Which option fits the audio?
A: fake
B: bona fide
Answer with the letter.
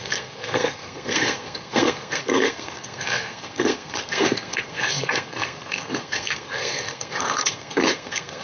A